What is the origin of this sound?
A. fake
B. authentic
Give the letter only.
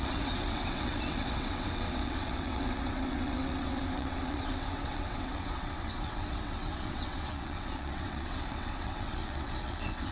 A